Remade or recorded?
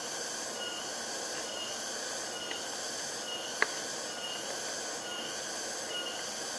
recorded